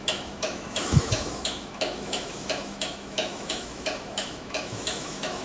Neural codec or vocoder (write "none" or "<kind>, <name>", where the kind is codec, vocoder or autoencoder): autoencoder, DAC-VAE